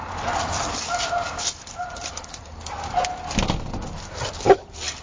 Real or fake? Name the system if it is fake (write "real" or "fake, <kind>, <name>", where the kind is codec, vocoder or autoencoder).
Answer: fake, vocoder, BigVGAN v2